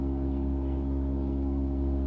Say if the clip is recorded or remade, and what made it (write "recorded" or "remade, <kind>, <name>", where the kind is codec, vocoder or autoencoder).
remade, codec, SNAC